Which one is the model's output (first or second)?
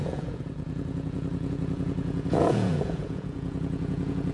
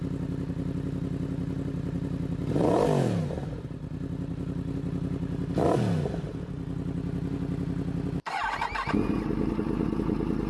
first